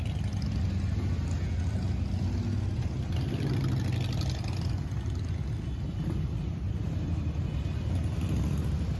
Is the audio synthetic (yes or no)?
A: no